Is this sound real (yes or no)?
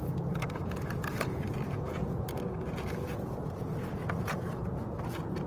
no